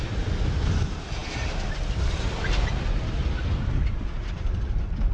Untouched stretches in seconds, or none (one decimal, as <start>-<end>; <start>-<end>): 0.0-5.1